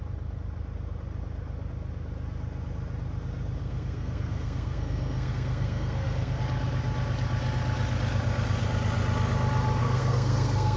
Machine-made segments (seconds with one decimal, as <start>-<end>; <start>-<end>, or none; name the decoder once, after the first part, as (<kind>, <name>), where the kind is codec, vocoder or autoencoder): 3.6-6.4 (codec, SNAC); 9.8-10.8